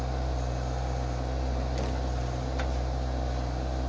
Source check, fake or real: real